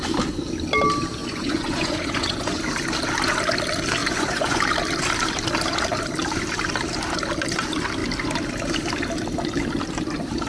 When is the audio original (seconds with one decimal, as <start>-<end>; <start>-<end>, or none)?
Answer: 0.0-1.2; 2.6-4.0; 4.6-10.5